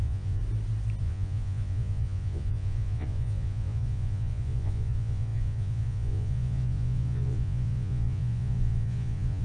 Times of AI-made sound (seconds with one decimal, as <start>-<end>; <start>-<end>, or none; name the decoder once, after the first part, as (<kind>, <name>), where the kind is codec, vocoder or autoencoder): 0.0-0.4 (vocoder, Vocos); 1.0-9.4